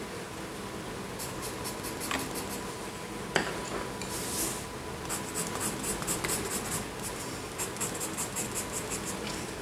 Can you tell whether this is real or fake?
real